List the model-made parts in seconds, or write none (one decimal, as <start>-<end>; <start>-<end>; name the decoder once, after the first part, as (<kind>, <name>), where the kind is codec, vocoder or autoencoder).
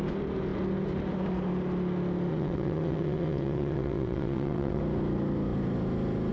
2.3-4.8 (vocoder, WaveNeXt)